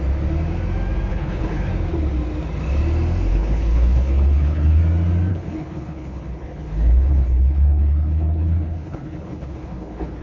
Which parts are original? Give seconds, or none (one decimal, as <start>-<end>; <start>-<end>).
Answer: 0.0-1.1; 1.7-3.3; 4.8-5.3